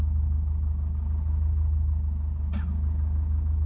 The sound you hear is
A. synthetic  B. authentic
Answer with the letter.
B